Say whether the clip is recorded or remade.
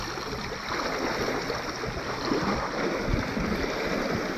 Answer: recorded